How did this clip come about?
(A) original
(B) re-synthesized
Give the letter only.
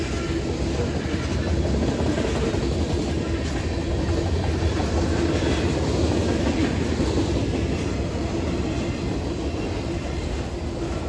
A